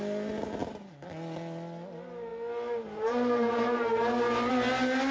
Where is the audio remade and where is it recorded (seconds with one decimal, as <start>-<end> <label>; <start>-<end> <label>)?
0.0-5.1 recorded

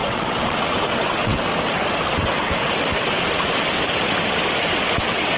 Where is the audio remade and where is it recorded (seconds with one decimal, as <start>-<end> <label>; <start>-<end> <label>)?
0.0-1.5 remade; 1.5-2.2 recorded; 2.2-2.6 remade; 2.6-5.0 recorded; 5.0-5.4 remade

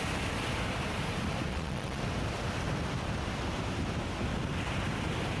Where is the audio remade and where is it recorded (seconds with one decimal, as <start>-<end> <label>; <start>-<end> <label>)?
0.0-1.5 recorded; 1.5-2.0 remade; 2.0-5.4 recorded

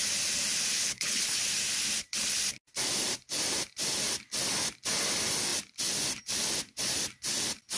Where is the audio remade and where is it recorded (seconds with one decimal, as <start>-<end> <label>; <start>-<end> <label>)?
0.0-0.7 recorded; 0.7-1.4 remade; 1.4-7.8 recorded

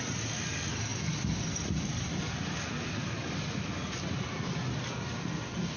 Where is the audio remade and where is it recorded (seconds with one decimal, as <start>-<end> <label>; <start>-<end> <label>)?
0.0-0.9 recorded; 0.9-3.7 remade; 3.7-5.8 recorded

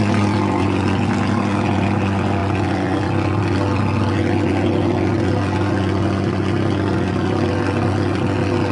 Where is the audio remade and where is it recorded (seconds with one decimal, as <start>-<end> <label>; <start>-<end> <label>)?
0.0-8.7 recorded

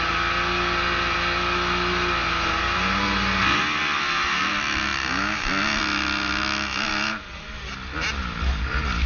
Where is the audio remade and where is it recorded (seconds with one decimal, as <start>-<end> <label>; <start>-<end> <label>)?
0.0-9.1 recorded